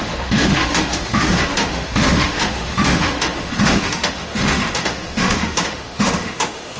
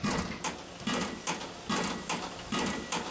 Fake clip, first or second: first